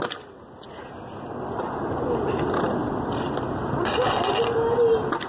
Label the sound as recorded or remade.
recorded